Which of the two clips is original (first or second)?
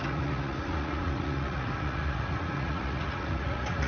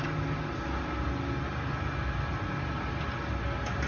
second